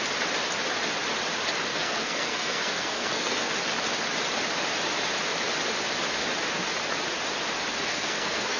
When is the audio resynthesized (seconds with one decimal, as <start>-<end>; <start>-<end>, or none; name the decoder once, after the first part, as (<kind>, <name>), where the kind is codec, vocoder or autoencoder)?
1.7-3.5 (codec, SNAC); 7.9-8.6